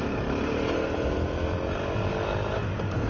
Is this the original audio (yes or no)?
yes